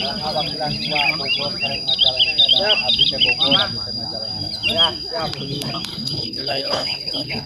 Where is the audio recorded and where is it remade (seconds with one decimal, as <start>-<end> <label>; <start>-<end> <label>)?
0.0-5.9 recorded; 5.9-7.5 remade